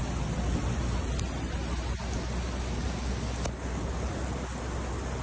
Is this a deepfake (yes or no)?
no